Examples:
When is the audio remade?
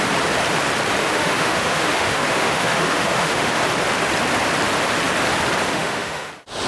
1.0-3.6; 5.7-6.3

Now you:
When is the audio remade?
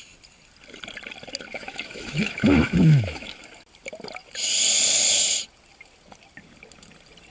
1.5-3.4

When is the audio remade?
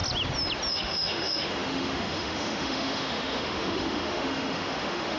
0.7-5.2